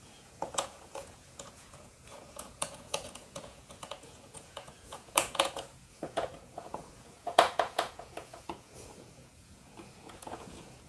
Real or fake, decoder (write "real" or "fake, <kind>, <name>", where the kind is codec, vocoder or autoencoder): fake, vocoder, Vocos